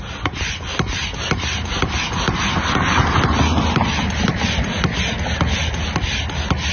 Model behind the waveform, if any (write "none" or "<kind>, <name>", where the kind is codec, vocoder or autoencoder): none